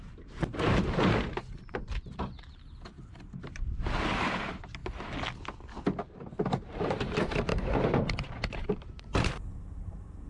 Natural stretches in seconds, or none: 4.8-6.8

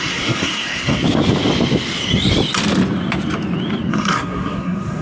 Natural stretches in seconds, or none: 1.0-3.9

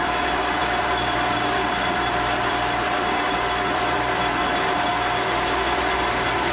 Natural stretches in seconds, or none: 4.9-5.8

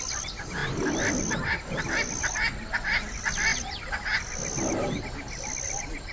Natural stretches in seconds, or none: 0.0-6.1

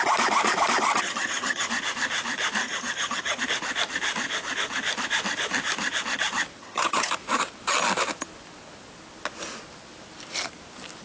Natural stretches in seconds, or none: 0.0-0.8; 1.7-2.6; 3.4-6.6; 7.1-11.0

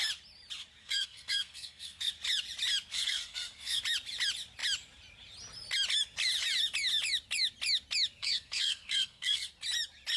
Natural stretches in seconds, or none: 0.0-0.8; 2.1-2.9; 3.8-8.2; 9.5-10.2

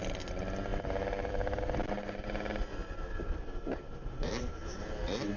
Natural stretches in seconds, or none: 0.0-2.8

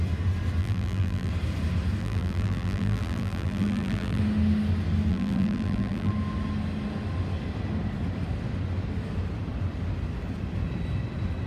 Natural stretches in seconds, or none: 0.0-0.6; 1.3-2.0; 4.2-5.1; 6.1-11.5